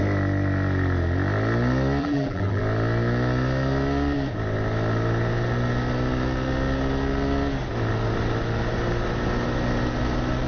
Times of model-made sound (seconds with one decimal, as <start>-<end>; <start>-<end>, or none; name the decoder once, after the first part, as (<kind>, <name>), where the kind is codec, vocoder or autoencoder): 2.0-2.6 (vocoder, BigVGAN v2)